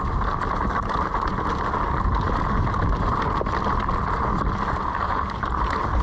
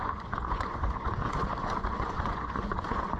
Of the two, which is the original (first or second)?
first